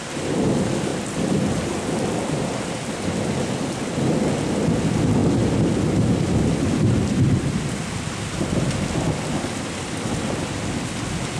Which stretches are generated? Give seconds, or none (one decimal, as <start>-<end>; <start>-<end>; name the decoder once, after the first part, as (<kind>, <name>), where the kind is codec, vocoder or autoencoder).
none